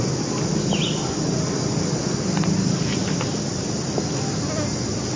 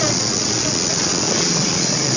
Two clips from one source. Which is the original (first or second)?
first